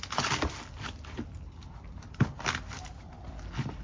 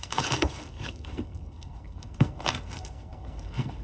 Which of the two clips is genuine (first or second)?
first